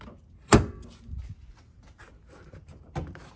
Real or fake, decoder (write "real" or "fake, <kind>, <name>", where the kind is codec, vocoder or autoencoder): real